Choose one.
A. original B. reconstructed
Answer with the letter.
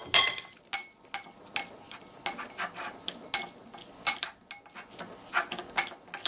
A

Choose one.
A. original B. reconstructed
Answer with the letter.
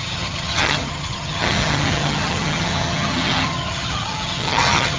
B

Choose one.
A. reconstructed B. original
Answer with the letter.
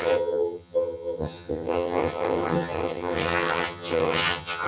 A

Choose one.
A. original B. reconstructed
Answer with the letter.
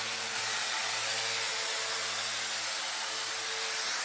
A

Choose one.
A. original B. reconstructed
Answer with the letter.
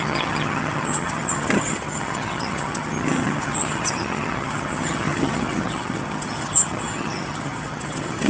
B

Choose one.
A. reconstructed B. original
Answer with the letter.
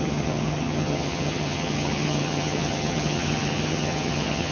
A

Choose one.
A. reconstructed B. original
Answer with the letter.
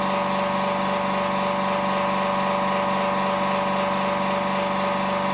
B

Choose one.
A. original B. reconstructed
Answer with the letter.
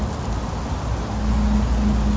A